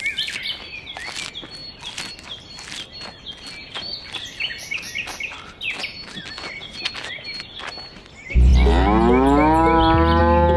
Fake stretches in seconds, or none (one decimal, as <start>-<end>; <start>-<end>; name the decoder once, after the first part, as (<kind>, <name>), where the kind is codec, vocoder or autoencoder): none